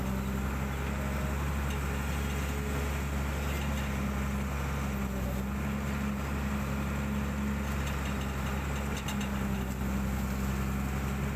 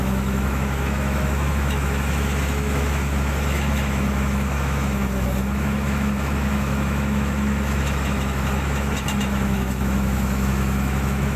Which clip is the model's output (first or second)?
second